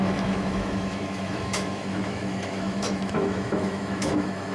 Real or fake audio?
fake